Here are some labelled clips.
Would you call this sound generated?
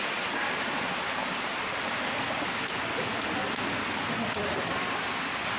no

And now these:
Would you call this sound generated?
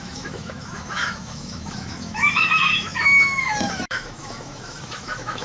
yes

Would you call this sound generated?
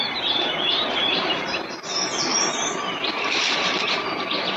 no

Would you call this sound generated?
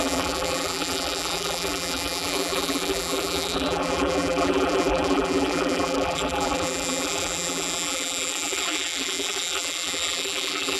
yes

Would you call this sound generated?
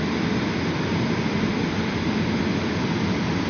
no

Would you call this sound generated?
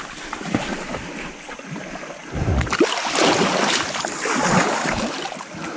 no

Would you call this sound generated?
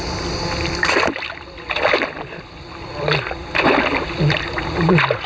no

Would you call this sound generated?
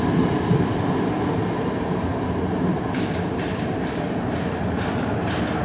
yes